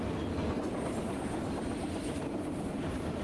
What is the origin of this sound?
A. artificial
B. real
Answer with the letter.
B